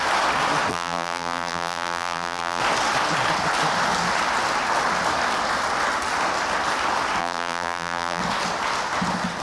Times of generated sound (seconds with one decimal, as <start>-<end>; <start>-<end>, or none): 0.7-2.6; 7.2-8.2